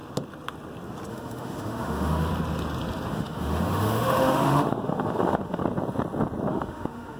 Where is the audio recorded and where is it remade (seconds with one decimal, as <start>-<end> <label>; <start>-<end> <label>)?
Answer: 0.0-1.1 recorded; 1.1-2.3 remade; 2.3-3.1 recorded; 3.1-5.6 remade; 5.6-6.5 recorded; 6.5-7.2 remade